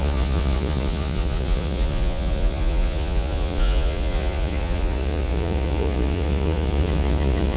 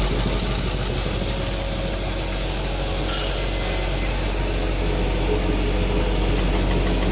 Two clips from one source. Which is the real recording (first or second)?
second